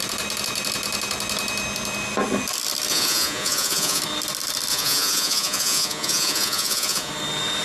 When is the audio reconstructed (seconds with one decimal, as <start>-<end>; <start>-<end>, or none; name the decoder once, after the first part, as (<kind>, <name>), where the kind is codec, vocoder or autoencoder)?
2.9-4.0 (vocoder, Vocos); 4.7-7.1